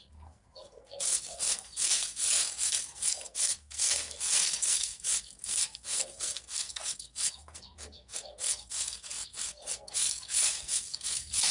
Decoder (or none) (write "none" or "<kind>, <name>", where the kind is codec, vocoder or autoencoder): codec, SNAC